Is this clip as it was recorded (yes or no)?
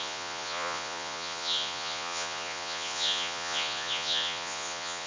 no